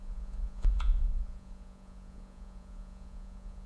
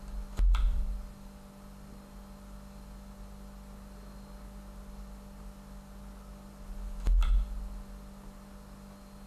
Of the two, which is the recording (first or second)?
second